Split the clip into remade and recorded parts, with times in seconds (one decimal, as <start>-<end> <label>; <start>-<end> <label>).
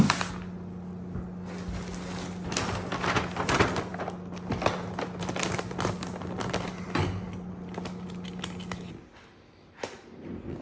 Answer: 0.0-10.6 recorded